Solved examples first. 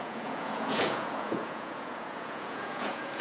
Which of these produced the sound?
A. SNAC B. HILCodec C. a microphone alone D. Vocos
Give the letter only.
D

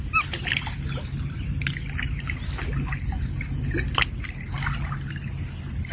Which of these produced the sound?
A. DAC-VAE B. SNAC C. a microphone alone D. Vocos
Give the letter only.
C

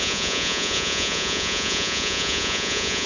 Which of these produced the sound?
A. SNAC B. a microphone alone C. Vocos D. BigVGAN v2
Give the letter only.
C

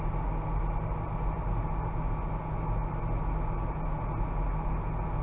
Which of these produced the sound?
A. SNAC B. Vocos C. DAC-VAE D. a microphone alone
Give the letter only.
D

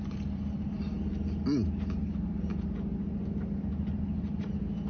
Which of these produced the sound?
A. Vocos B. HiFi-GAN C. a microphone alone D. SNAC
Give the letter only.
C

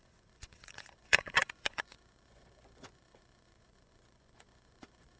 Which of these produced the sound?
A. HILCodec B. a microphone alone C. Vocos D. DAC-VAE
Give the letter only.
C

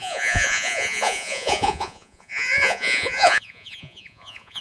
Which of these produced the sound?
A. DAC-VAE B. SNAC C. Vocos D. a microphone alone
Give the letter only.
C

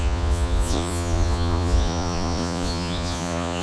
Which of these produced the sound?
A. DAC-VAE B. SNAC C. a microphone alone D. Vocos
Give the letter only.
D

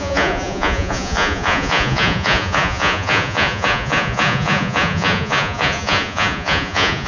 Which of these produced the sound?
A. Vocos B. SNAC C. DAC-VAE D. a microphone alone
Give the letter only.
A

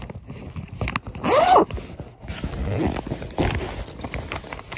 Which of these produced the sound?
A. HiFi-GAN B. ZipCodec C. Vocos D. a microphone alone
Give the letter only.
D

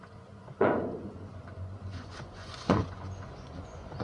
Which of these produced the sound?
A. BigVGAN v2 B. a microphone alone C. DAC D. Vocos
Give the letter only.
D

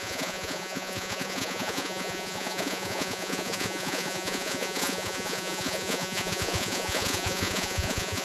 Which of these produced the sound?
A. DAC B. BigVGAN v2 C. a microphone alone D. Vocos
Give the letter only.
D